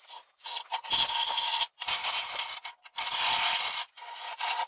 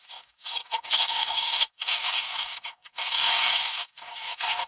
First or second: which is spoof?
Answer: second